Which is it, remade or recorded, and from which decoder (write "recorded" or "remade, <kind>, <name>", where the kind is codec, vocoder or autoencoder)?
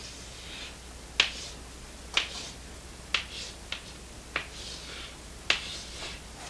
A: recorded